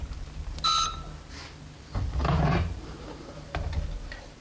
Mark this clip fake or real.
real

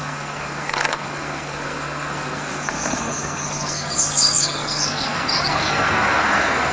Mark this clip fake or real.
fake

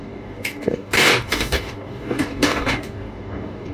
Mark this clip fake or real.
fake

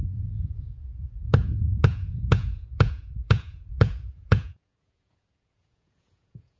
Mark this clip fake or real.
fake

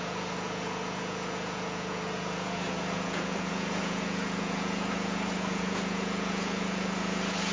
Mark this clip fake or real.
fake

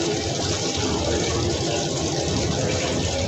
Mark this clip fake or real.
fake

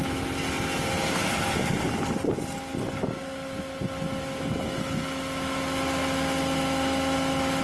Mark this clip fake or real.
real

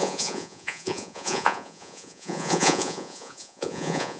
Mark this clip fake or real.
fake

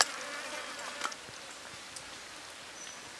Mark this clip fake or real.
real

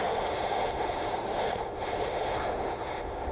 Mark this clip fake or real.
fake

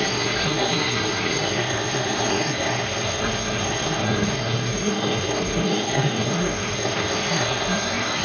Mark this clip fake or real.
fake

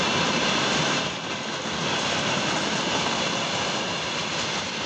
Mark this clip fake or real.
real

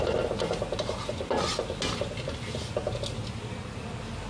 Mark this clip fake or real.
real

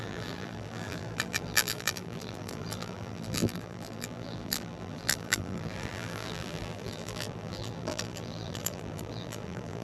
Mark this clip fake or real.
fake